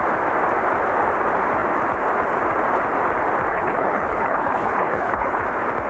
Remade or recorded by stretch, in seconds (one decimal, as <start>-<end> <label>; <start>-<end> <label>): 0.0-3.5 recorded; 3.5-5.4 remade; 5.4-5.9 recorded

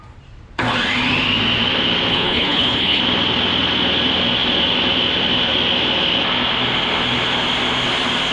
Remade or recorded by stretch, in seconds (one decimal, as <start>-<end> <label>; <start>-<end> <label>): 0.0-2.1 recorded; 2.1-3.0 remade; 3.0-8.3 recorded